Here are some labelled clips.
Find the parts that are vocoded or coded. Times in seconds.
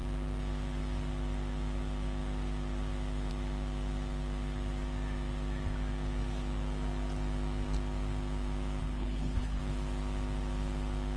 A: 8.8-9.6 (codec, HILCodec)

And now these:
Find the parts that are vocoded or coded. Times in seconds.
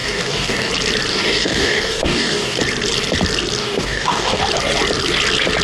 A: 0.0-0.7 (codec, DAC); 1.1-2.6; 3.6-4.4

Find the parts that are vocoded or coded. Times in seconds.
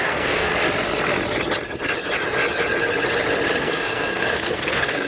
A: 0.0-0.5 (codec, SNAC); 3.6-5.1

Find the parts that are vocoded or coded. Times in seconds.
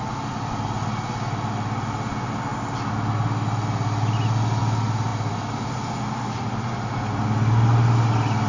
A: none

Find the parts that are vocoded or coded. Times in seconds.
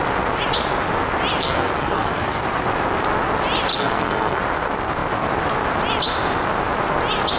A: 1.4-2.4 (codec, SNAC); 3.7-4.4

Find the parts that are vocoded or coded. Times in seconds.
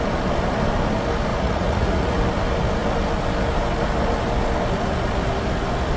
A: 1.3-2.2 (vocoder, Vocos)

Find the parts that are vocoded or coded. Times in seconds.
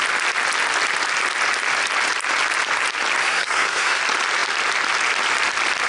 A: 3.2-4.0 (codec, SNAC)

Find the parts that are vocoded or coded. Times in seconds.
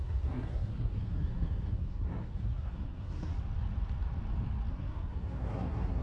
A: 0.0-3.3 (codec, SNAC); 4.7-6.0